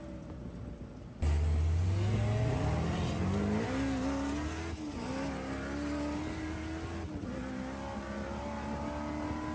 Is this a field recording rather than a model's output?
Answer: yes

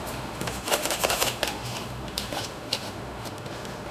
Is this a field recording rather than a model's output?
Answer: no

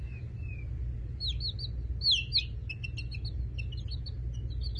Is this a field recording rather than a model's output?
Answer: yes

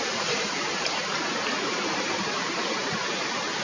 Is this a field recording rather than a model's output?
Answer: no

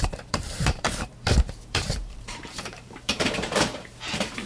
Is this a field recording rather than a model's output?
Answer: no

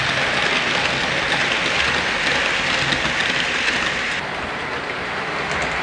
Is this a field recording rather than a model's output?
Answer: yes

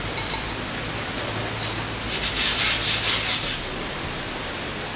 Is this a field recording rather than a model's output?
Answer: yes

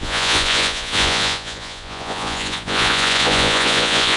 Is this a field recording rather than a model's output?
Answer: no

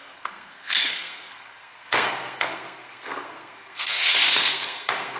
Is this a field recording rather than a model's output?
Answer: no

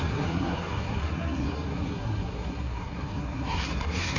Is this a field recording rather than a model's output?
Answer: no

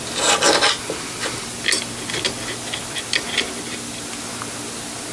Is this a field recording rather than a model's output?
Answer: yes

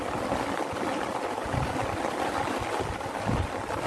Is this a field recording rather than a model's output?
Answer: yes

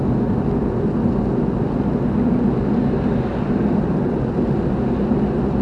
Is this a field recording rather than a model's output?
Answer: yes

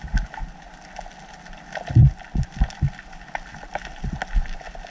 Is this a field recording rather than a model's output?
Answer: yes